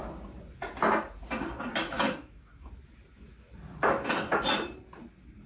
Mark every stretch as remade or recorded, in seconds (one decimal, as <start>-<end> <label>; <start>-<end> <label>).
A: 0.0-1.8 recorded; 1.8-2.7 remade; 2.7-5.5 recorded